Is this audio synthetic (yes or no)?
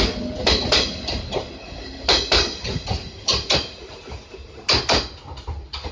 no